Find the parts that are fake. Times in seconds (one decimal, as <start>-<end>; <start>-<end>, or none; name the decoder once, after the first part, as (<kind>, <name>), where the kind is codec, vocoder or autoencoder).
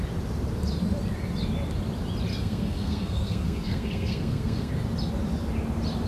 2.3-4.7 (codec, SNAC)